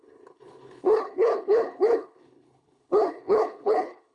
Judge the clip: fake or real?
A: fake